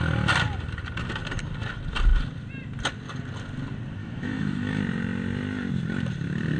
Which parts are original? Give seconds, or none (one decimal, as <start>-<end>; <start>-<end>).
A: 0.0-4.0; 4.8-6.6